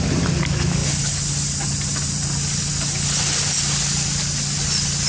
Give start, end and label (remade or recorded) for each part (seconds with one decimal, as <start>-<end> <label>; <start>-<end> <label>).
0.0-5.1 recorded